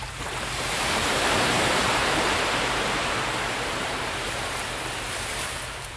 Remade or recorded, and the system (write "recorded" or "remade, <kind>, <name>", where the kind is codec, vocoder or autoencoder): remade, vocoder, BigVGAN v2